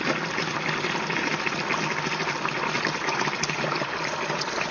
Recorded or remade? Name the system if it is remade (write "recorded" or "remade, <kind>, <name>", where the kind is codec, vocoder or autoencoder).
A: recorded